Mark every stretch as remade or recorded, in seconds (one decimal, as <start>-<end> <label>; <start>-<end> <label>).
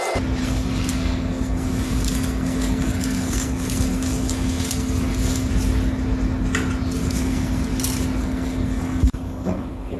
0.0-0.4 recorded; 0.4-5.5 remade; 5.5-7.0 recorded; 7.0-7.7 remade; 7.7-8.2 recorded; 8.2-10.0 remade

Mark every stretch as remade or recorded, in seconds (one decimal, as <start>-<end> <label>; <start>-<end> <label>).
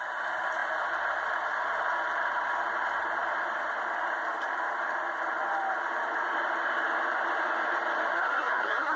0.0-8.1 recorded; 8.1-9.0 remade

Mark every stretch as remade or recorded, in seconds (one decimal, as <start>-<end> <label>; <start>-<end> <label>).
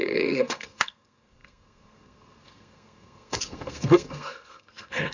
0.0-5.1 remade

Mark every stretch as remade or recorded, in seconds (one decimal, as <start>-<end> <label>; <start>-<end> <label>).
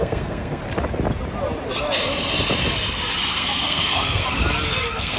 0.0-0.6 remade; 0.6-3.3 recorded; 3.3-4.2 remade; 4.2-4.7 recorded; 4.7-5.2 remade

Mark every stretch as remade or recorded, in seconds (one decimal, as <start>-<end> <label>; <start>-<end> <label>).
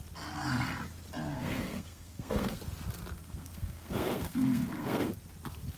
0.0-1.3 recorded; 1.3-2.6 remade; 2.6-3.2 recorded; 3.2-5.1 remade; 5.1-5.8 recorded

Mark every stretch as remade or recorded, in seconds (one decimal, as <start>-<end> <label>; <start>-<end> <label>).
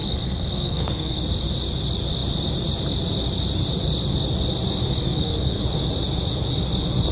0.0-1.2 remade; 1.2-5.0 recorded; 5.0-5.6 remade; 5.6-7.1 recorded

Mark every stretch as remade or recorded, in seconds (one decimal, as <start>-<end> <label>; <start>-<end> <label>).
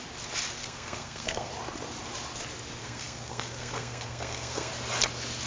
0.0-0.6 recorded; 0.6-1.5 remade; 1.5-2.8 recorded; 2.8-4.7 remade; 4.7-5.5 recorded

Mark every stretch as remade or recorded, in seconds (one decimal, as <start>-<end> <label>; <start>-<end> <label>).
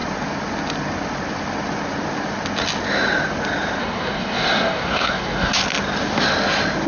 0.0-3.8 recorded; 3.8-5.6 remade; 5.6-6.9 recorded